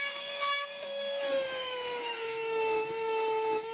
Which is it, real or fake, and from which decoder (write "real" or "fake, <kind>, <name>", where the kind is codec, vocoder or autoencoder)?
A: fake, codec, DAC